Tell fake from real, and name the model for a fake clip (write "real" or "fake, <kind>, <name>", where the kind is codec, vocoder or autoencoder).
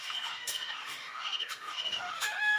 fake, autoencoder, DAC-VAE